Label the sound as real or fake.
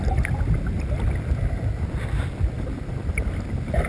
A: real